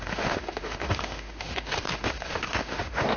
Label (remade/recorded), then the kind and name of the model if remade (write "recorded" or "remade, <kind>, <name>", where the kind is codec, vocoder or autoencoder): remade, autoencoder, DAC-VAE